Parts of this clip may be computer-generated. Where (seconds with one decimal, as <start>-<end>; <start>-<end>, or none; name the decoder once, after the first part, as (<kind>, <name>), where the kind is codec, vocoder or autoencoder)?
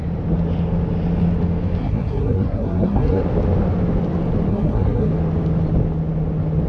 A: 1.8-3.2 (codec, SNAC); 4.5-5.1